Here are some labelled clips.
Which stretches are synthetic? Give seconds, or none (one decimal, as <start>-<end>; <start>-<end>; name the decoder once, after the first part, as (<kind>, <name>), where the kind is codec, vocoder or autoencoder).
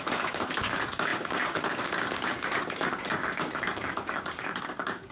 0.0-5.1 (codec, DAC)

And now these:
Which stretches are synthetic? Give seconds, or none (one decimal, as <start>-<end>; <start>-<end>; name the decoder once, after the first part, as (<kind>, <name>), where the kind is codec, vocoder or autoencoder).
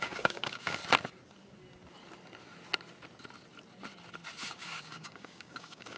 0.0-0.8 (codec, DAC); 4.4-6.0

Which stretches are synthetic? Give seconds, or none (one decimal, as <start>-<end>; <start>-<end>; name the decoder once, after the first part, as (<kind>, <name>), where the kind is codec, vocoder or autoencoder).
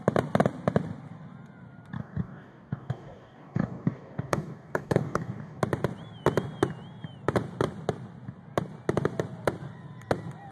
2.0-5.6 (codec, DAC)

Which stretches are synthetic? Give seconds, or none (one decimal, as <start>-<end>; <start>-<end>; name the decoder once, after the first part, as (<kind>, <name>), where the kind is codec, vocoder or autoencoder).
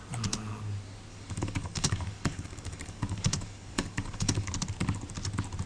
1.1-4.5 (codec, DAC)